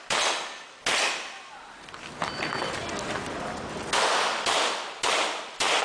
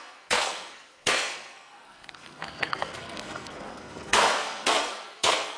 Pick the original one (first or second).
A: first